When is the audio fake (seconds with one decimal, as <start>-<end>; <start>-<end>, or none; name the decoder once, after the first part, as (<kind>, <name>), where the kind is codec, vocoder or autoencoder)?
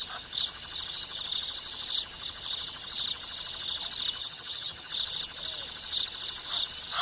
4.2-4.9 (vocoder, HiFi-GAN)